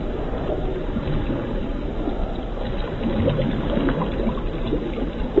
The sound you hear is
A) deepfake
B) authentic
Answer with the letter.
B